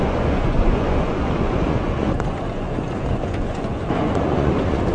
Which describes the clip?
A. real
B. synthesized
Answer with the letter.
B